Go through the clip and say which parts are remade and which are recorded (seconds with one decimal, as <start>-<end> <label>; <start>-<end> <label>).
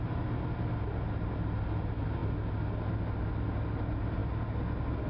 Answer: 0.0-5.1 recorded